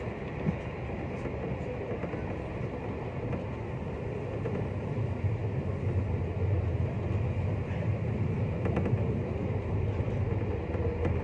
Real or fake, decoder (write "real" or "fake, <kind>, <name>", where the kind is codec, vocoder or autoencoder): real